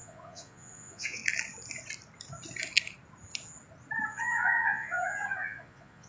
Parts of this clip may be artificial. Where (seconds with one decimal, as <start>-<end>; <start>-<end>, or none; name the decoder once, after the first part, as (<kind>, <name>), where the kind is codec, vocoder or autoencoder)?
0.0-1.2 (vocoder, Vocos); 4.1-6.1